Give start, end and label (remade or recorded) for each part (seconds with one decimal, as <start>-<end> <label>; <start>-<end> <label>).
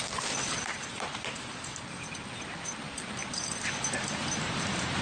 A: 0.0-5.0 remade